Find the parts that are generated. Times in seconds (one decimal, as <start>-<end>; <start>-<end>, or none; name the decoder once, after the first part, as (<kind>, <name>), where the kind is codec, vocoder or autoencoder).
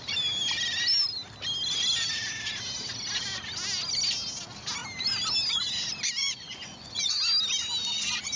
6.2-7.1 (vocoder, Vocos)